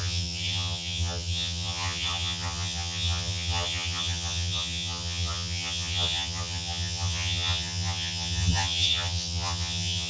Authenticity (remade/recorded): remade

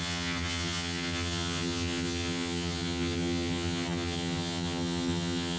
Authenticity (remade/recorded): remade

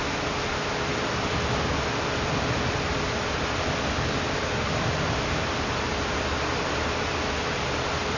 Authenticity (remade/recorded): recorded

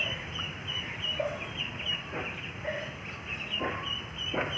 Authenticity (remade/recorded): recorded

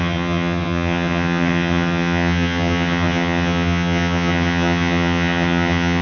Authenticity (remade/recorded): remade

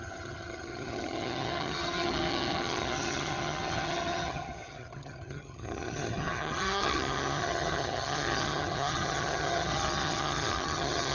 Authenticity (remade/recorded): remade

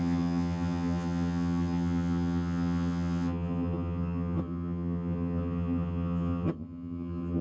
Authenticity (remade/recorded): remade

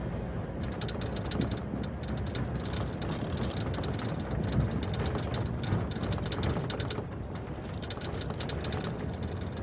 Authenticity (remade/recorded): recorded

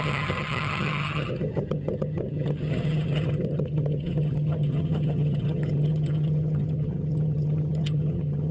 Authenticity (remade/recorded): remade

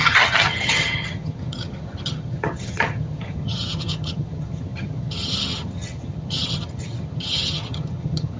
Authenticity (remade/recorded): remade